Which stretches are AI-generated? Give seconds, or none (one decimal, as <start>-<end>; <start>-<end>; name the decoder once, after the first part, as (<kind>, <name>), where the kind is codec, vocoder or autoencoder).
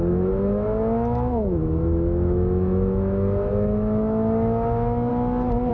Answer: 0.0-5.1 (autoencoder, DAC-VAE)